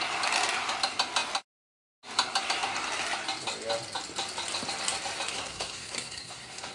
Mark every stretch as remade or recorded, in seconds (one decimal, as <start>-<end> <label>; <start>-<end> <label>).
0.0-5.3 recorded; 5.3-6.7 remade